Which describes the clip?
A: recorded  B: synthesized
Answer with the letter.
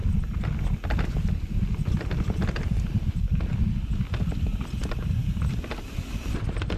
A